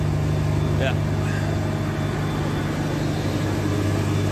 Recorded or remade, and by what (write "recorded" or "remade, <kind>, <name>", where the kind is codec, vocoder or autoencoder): recorded